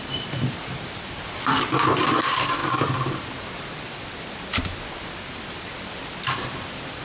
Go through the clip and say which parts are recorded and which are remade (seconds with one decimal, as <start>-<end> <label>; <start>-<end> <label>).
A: 0.0-7.0 remade